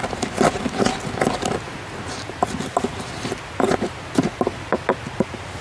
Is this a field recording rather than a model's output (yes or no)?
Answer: yes